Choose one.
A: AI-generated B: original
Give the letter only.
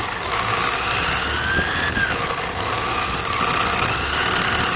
B